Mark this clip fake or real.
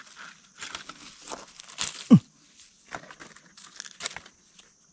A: real